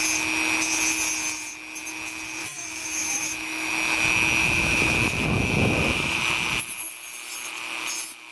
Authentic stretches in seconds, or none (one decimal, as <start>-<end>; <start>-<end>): 0.0-2.4; 3.7-4.4; 6.2-8.3